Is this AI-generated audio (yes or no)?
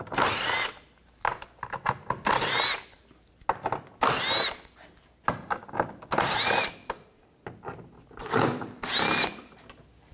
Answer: no